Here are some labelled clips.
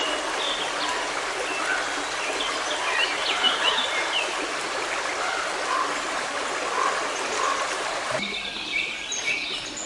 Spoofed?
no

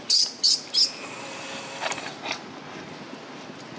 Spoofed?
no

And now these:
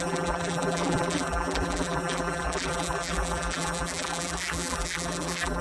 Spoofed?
yes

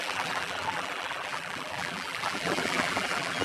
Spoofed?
yes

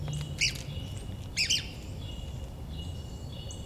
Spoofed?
no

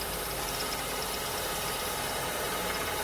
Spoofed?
yes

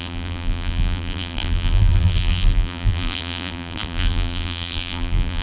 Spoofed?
yes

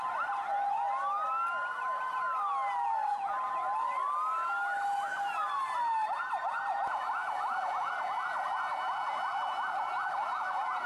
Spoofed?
no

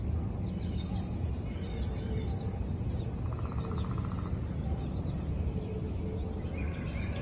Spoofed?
no